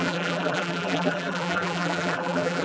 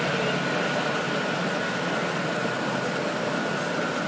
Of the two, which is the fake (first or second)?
first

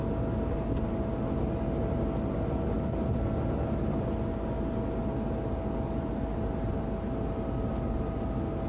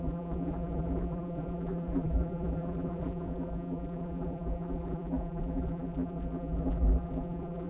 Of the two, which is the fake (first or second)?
second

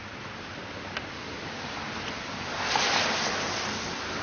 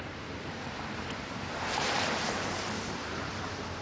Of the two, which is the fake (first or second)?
second